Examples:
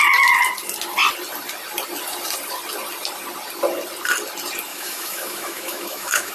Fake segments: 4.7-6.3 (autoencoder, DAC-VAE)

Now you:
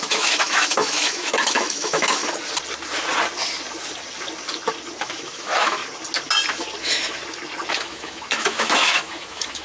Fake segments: 0.0-2.2 (autoencoder, DAC-VAE); 5.0-5.8; 6.8-7.2; 7.7-9.6

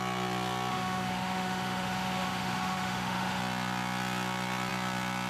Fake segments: 0.7-3.4 (autoencoder, DAC-VAE)

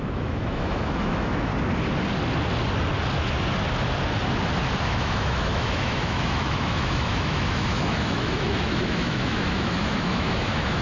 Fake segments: 0.0-1.5 (autoencoder, DAC-VAE); 4.8-10.8

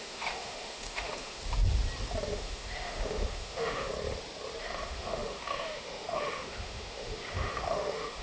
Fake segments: 0.0-1.4 (autoencoder, DAC-VAE); 2.3-3.9; 4.6-8.2

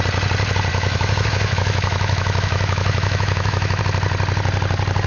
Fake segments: 0.7-3.8 (autoencoder, DAC-VAE)

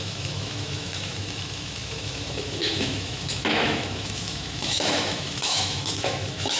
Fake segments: 0.0-6.6 (autoencoder, DAC-VAE)

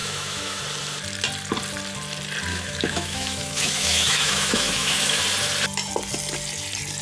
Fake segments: 0.0-0.6 (autoencoder, DAC-VAE); 2.5-5.2